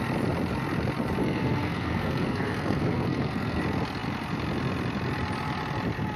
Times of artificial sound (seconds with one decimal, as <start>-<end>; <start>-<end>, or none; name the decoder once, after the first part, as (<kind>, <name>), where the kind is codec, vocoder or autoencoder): 1.2-3.6 (codec, SNAC)